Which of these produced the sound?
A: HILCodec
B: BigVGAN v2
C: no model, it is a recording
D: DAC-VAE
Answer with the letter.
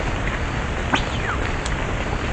C